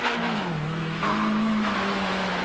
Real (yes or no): no